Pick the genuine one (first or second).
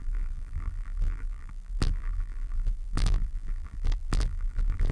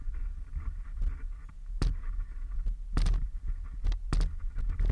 second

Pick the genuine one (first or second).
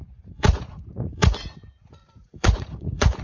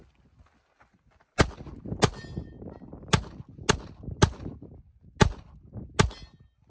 second